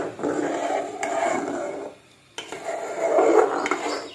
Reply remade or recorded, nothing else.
recorded